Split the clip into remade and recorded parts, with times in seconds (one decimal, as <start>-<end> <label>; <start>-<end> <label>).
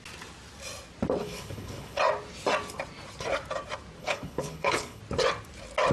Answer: 0.0-1.2 recorded; 1.2-2.0 remade; 2.0-4.0 recorded; 4.0-5.0 remade; 5.0-5.9 recorded